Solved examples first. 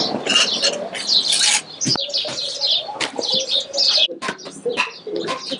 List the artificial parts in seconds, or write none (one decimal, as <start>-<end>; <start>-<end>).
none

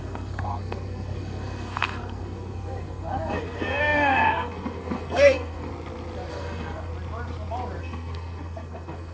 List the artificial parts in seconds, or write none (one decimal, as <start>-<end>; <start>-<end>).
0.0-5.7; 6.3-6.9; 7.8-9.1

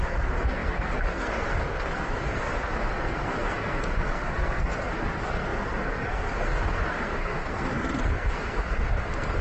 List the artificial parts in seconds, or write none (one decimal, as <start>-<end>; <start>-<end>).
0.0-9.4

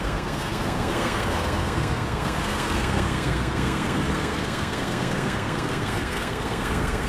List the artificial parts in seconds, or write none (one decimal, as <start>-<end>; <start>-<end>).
0.0-7.1